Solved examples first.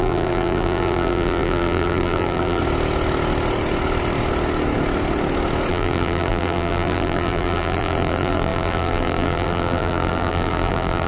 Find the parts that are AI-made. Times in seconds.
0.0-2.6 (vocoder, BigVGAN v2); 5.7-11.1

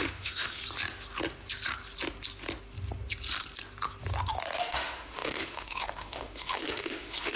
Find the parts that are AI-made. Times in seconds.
0.0-0.6 (autoencoder, DAC-VAE); 4.6-7.4

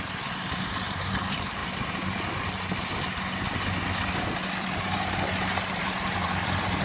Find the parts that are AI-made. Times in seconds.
0.0-1.6 (vocoder, BigVGAN v2); 5.7-6.8

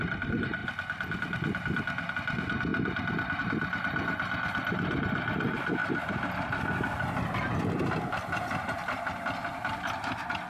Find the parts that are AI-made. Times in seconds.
0.6-2.1 (vocoder, BigVGAN v2)

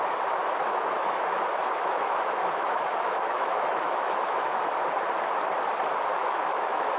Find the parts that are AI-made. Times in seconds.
0.4-4.6 (autoencoder, DAC-VAE); 6.1-7.0

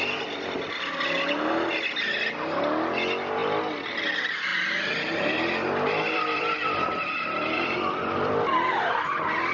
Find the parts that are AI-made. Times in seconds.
4.5-9.0 (vocoder, BigVGAN v2)

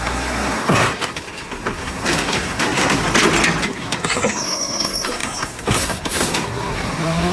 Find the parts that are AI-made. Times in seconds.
0.0-3.0 (codec, SNAC); 3.6-7.3